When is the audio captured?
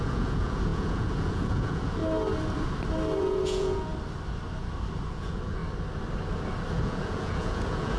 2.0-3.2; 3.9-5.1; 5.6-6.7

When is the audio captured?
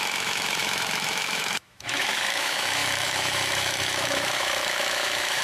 none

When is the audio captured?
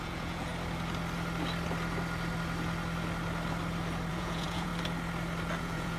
0.5-4.1; 4.7-5.6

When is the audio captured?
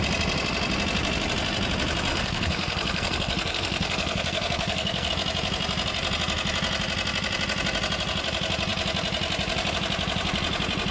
0.0-2.1; 5.1-10.9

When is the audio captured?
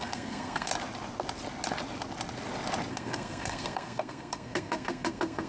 0.7-2.9